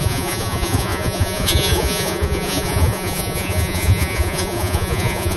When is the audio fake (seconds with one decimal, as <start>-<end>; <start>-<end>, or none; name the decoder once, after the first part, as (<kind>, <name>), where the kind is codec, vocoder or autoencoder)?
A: 0.0-5.4 (vocoder, Vocos)